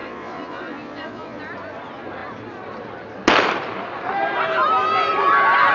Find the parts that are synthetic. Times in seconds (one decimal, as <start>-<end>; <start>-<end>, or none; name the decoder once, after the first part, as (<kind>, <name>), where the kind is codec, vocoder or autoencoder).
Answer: 0.0-1.4 (vocoder, Vocos)